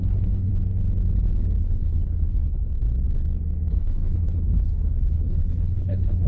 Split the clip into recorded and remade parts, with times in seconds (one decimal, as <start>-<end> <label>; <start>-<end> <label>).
0.0-0.5 remade; 0.5-1.6 recorded; 1.6-2.7 remade; 2.7-3.7 recorded; 3.7-6.3 remade